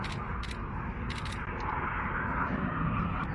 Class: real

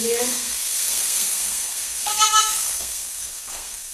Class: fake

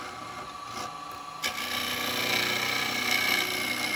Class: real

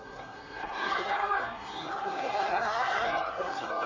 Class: fake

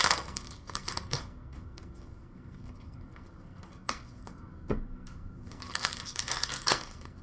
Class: fake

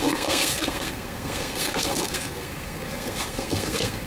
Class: fake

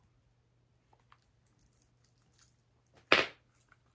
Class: real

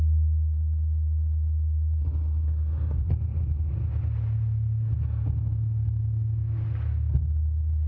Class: real